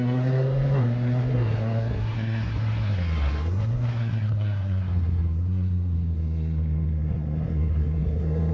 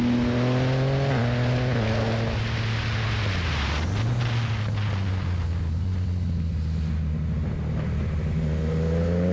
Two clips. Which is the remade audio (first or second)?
first